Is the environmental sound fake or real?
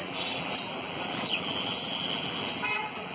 fake